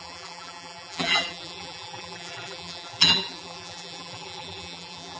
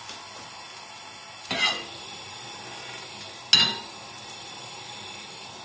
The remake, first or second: first